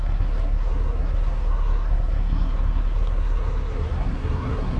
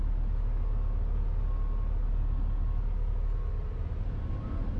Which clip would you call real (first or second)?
second